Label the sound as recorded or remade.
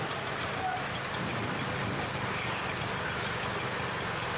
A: recorded